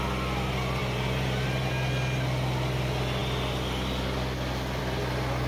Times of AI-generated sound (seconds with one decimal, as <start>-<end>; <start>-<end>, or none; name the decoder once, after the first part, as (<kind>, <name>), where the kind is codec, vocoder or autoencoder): 0.8-1.7 (vocoder, BigVGAN v2)